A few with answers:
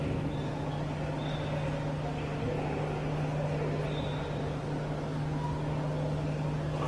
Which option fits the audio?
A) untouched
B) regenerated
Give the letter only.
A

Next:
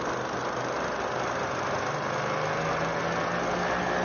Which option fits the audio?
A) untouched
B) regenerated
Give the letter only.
A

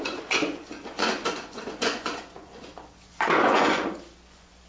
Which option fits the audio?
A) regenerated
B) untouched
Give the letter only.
A